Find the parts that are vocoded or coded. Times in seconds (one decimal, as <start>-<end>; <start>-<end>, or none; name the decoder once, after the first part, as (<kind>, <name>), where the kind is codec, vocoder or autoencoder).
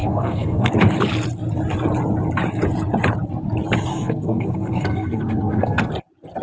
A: 0.0-0.7 (codec, SNAC); 3.9-5.9